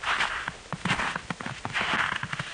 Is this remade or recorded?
recorded